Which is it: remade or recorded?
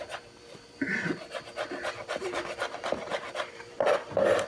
remade